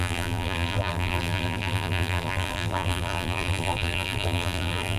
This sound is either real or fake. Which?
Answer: fake